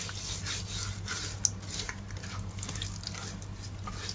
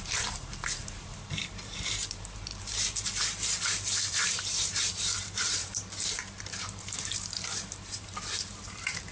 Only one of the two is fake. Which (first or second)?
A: second